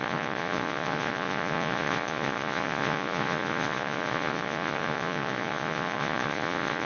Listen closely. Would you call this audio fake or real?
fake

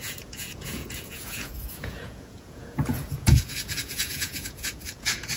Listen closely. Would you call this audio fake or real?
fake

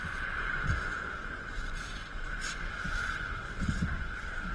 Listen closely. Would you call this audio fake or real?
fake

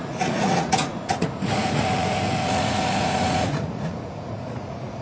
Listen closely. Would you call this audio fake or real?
fake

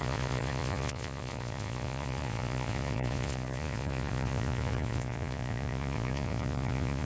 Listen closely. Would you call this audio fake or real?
fake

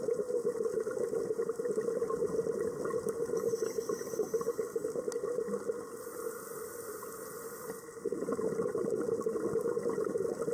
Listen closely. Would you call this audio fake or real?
real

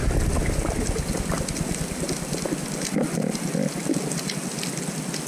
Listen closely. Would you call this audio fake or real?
real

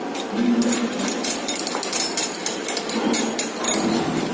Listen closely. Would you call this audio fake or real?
real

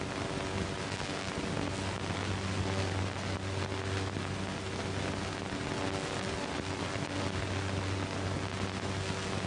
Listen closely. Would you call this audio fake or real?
real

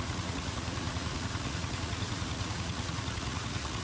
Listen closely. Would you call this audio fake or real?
fake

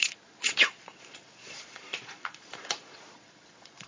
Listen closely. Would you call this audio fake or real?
fake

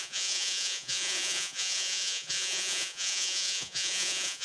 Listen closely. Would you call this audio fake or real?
fake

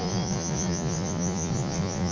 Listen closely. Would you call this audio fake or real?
fake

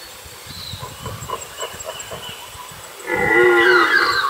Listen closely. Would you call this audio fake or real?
real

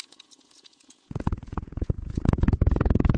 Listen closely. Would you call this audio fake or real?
fake